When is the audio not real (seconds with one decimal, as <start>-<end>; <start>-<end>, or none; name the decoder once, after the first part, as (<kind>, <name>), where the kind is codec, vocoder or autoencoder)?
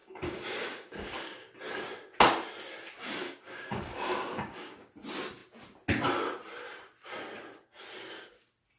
0.0-1.6 (codec, DAC); 3.2-4.9